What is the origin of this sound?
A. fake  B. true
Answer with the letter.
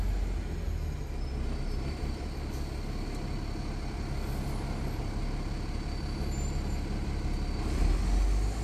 B